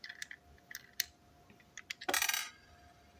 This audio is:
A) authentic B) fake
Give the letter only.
A